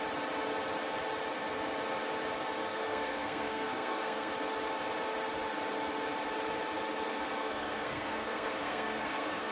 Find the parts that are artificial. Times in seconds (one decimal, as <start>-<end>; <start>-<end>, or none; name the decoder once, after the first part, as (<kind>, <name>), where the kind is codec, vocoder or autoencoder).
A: 2.7-4.3 (codec, SNAC); 7.4-9.5